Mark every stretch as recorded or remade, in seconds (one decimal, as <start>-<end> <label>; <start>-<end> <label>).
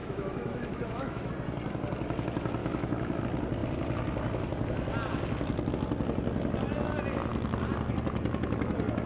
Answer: 0.0-1.3 remade; 1.3-2.6 recorded; 2.6-3.2 remade; 3.2-9.1 recorded